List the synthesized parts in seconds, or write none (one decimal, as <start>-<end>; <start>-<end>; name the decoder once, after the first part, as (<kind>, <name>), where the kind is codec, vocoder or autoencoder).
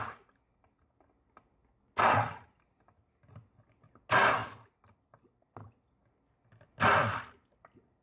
none